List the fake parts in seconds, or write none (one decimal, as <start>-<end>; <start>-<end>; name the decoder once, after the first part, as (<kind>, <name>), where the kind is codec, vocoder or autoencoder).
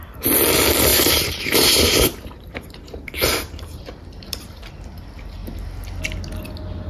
0.9-4.7 (vocoder, BigVGAN v2)